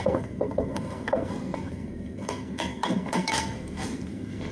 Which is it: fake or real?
fake